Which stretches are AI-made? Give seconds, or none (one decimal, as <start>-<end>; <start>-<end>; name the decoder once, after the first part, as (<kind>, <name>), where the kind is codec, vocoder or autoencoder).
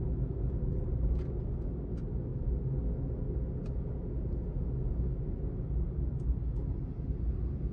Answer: none